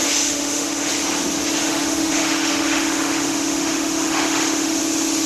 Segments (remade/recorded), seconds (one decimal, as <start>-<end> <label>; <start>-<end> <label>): 0.0-0.9 remade; 0.9-1.6 recorded; 1.6-4.8 remade; 4.8-5.3 recorded